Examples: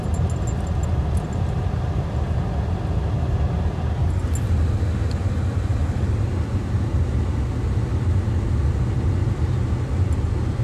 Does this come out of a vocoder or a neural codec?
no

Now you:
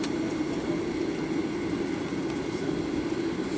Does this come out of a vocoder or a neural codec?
no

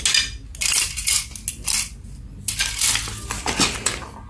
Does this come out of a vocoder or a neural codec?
no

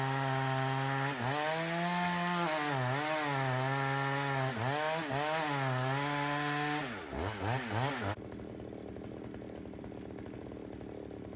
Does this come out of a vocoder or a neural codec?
no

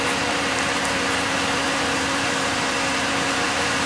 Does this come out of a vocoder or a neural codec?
yes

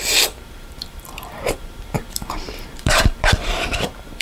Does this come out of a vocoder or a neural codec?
yes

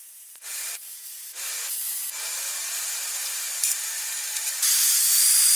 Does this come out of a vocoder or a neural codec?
yes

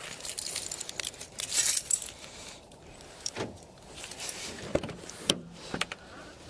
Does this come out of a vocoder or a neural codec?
yes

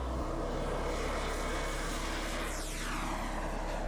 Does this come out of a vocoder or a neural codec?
no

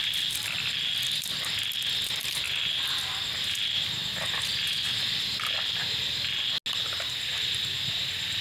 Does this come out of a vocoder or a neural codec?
no